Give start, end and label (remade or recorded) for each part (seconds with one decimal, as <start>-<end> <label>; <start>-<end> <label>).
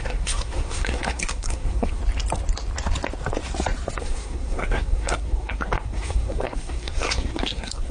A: 0.0-2.0 remade; 2.0-4.0 recorded; 4.0-7.9 remade